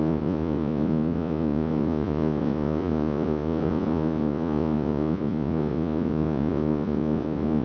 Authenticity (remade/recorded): remade